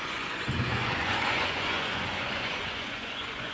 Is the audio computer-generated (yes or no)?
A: yes